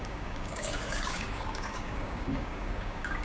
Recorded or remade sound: remade